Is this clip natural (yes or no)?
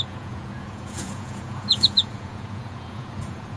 no